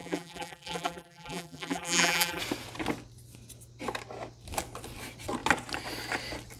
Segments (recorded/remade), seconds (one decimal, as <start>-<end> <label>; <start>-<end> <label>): 0.0-2.4 remade; 2.4-6.6 recorded